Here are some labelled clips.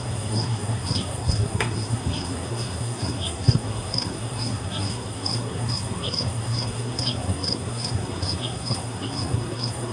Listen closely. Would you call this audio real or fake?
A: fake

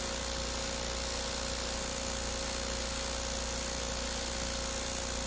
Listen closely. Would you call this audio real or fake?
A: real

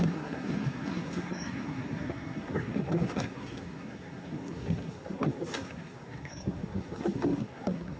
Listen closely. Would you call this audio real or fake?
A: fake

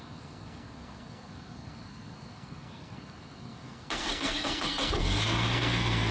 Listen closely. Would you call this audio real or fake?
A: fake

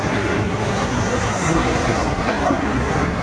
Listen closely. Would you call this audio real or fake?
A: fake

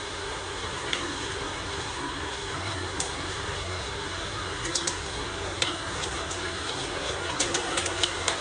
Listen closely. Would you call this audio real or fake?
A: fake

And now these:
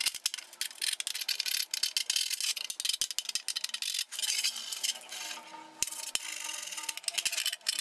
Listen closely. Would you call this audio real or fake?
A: real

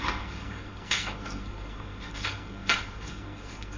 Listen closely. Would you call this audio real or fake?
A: fake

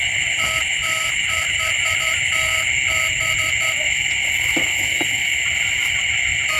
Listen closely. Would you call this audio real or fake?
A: real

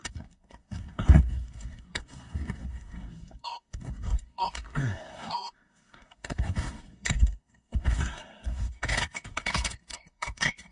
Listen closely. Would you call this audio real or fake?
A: fake